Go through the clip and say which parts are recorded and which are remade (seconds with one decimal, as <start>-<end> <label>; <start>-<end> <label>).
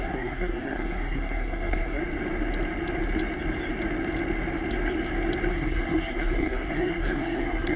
0.0-2.0 remade; 2.0-5.5 recorded; 5.5-7.8 remade